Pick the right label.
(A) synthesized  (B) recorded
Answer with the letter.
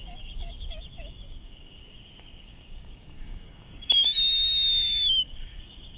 A